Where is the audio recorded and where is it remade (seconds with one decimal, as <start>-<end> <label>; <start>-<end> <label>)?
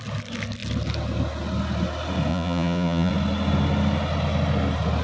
0.0-2.3 recorded; 2.3-3.1 remade; 3.1-5.0 recorded